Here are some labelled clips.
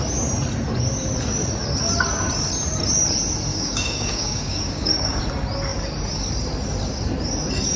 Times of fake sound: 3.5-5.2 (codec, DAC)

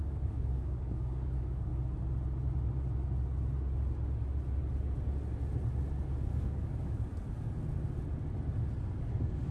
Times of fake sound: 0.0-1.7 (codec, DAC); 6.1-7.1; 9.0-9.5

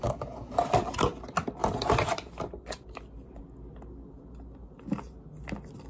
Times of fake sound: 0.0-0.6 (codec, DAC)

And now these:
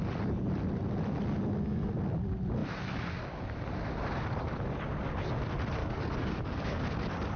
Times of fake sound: 5.8-6.8 (codec, DAC)